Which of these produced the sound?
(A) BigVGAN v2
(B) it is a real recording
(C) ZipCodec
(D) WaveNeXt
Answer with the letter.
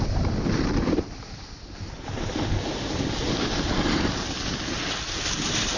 B